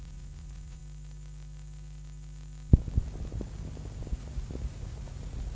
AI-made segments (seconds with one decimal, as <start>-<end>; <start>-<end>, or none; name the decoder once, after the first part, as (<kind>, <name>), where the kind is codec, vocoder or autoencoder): 0.0-0.8 (vocoder, Vocos); 4.1-5.5